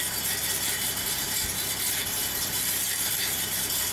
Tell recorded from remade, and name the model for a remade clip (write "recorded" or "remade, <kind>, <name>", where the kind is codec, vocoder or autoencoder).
remade, vocoder, BigVGAN v2